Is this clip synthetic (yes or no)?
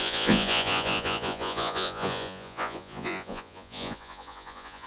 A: yes